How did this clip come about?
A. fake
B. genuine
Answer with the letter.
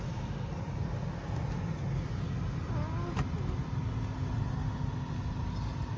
B